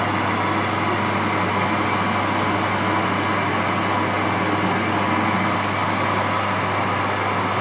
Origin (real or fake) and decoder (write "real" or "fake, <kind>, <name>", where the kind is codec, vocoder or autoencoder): real